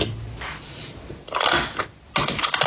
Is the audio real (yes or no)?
yes